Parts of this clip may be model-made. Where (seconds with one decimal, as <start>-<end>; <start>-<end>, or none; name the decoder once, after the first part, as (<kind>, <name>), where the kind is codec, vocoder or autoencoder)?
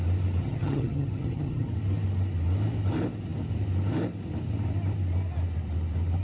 0.4-1.7 (vocoder, HiFi-GAN)